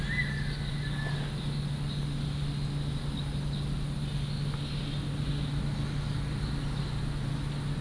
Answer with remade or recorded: recorded